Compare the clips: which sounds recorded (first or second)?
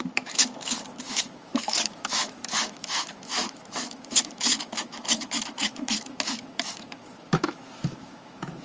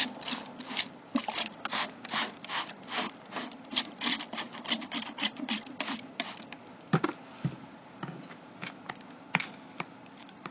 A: second